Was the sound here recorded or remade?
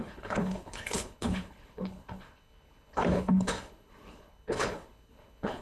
remade